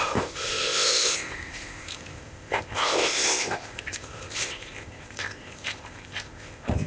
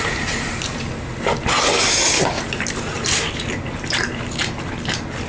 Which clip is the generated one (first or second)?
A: first